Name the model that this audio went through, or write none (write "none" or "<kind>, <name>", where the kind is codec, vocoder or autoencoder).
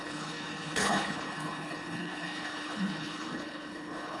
codec, HILCodec